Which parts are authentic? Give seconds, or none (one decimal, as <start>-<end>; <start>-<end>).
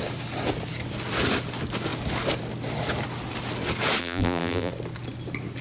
0.0-4.0; 4.7-5.6